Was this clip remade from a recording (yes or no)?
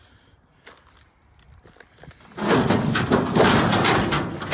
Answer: yes